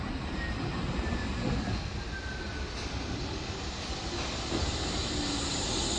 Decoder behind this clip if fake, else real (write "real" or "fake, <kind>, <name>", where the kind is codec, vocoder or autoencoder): real